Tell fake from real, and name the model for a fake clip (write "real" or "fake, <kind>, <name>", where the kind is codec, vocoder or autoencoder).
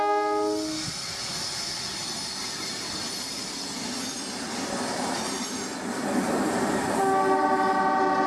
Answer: real